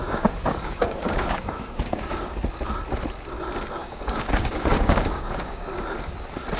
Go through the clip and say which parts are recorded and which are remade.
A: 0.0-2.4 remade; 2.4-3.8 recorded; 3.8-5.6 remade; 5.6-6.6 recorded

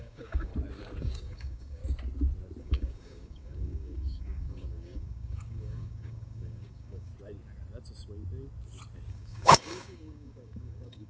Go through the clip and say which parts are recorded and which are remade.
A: 0.0-0.5 remade; 0.5-1.0 recorded; 1.0-1.8 remade; 1.8-2.6 recorded; 2.6-7.1 remade; 7.1-9.1 recorded; 9.1-11.1 remade

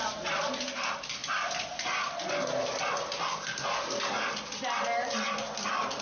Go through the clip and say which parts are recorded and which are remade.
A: 0.0-6.0 recorded

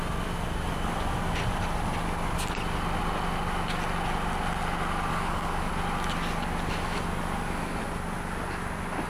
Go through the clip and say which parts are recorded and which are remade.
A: 0.0-5.1 recorded; 5.1-5.7 remade; 5.7-9.1 recorded

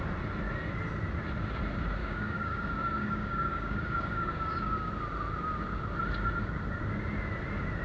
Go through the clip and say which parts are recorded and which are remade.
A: 0.0-2.0 recorded; 2.0-4.9 remade; 4.9-7.8 recorded